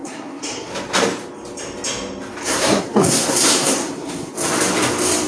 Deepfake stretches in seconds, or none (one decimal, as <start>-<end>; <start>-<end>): 0.0-0.7; 2.4-4.3

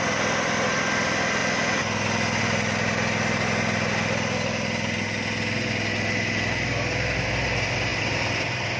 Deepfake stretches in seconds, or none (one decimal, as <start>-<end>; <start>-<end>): none

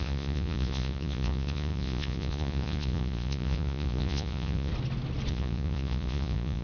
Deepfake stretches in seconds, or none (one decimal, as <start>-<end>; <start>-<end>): 0.0-4.7; 5.3-6.6

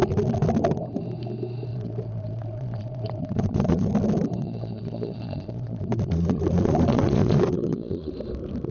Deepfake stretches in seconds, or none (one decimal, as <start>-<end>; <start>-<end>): 1.7-3.9; 4.4-8.1

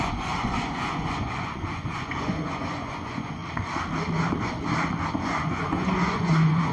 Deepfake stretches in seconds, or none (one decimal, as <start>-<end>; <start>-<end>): 0.0-3.4; 5.1-6.7